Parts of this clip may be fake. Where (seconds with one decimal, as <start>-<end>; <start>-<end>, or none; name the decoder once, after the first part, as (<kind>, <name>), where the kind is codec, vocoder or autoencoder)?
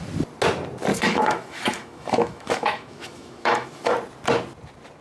0.9-3.9 (autoencoder, DAC-VAE)